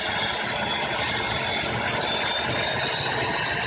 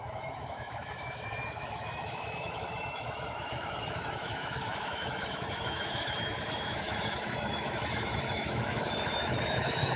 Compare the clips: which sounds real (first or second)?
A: first